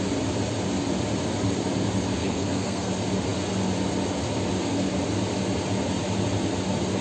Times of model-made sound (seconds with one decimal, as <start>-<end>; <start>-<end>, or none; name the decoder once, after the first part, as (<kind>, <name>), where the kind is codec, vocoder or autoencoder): 2.2-2.9 (codec, SNAC)